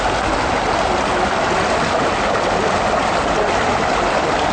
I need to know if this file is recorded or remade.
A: recorded